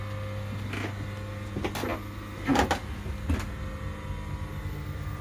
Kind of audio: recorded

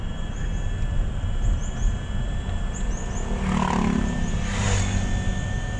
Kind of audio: recorded